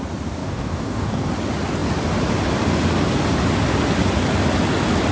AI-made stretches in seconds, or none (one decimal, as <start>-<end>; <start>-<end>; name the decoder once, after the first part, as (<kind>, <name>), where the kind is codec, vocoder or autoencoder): 0.4-1.3 (codec, DAC)